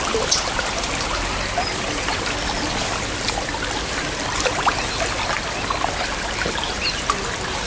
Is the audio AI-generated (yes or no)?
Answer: no